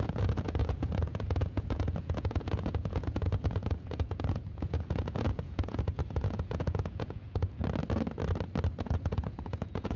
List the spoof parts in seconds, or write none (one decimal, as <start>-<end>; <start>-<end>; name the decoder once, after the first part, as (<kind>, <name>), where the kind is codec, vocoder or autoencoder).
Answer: 0.0-7.6 (vocoder, Vocos); 8.8-10.0